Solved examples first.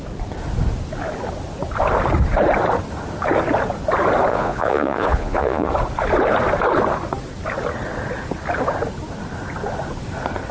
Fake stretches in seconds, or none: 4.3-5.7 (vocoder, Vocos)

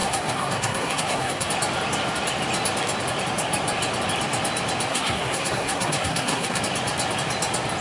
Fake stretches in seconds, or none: 0.0-1.5 (codec, SNAC); 4.9-6.6

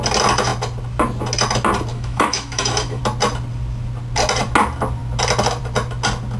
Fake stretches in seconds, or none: 1.9-3.0 (autoencoder, DAC-VAE)